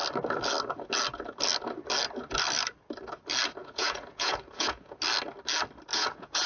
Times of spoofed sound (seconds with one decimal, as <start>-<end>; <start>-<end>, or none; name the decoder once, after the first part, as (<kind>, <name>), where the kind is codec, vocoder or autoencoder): 3.6-5.0 (vocoder, Vocos); 5.9-6.5